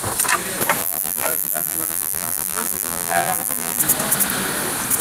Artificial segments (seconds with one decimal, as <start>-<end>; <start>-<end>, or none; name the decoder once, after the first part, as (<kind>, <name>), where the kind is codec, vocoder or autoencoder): 0.8-3.8 (vocoder, BigVGAN v2)